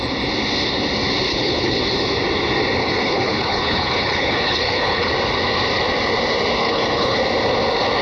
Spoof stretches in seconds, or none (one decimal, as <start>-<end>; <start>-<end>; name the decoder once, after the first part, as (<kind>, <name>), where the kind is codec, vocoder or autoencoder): 1.3-1.8 (codec, HILCodec); 2.8-5.1; 6.6-7.2